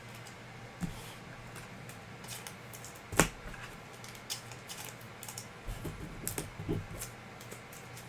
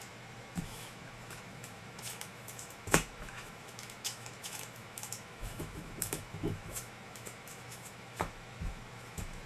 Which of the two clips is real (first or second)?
first